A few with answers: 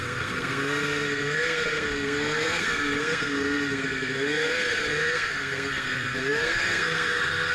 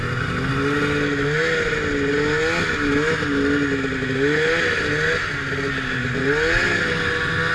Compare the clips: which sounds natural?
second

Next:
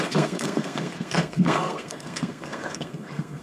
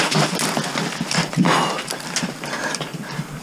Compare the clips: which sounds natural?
second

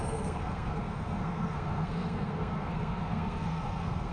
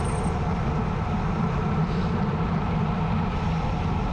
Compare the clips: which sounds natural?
second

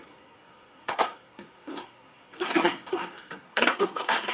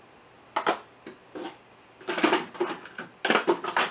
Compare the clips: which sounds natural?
second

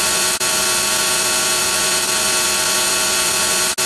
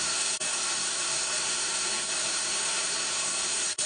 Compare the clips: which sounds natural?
first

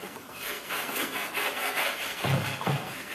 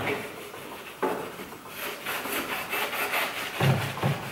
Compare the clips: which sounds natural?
second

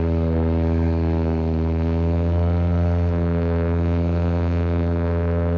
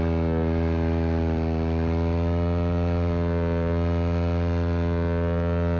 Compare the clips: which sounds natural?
second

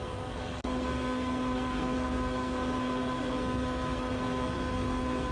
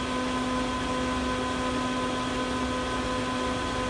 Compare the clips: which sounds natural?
second